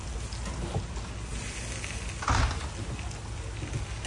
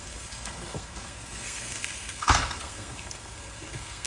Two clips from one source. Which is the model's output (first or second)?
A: second